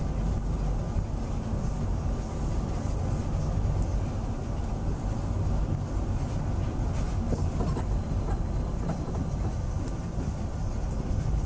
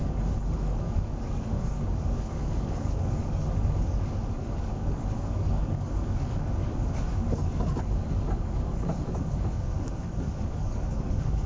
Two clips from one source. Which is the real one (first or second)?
first